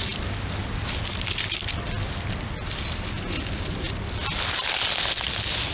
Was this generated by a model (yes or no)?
no